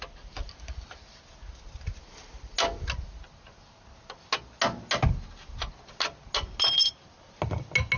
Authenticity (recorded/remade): recorded